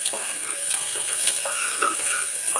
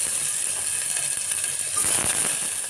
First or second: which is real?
second